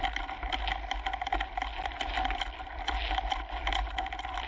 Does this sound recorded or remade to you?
recorded